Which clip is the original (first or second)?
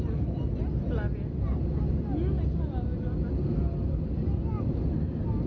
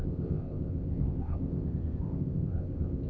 first